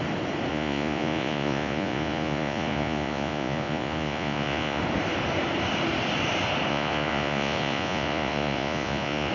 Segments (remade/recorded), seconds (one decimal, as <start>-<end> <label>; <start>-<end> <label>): 0.0-0.5 recorded; 0.5-4.8 remade; 4.8-6.7 recorded; 6.7-9.3 remade